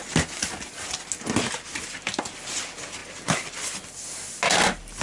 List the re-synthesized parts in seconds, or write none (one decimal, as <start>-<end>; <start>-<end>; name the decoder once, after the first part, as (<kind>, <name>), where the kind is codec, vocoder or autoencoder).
none